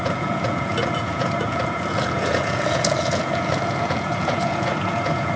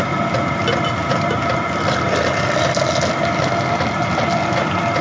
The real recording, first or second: second